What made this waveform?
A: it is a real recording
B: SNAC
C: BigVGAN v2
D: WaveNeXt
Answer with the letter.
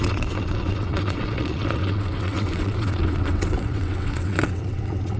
D